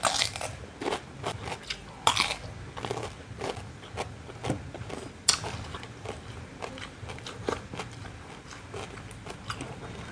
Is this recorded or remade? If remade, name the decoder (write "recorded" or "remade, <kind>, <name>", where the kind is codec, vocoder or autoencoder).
recorded